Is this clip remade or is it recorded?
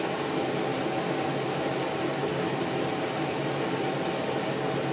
recorded